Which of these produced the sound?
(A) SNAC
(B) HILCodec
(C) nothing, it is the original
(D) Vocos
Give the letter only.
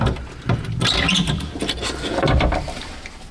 C